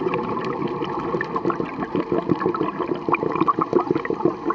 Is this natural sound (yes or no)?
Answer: yes